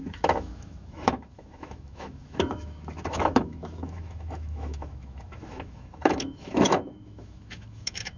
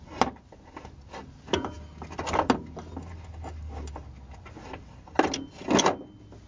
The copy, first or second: first